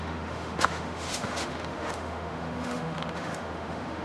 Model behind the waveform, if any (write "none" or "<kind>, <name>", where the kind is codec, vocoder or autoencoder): autoencoder, DAC-VAE